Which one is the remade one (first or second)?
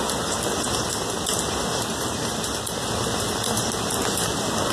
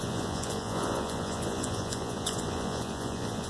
second